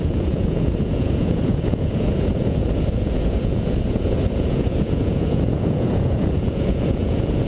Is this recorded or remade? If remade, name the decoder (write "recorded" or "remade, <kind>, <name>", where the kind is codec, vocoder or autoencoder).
remade, vocoder, Vocos